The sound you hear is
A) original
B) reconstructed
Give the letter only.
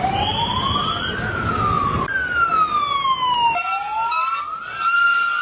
A